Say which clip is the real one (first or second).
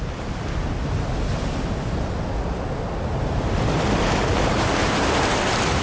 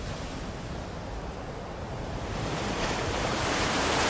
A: first